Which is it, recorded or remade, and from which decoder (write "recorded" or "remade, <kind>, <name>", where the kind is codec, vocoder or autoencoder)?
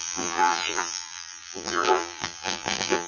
remade, vocoder, BigVGAN v2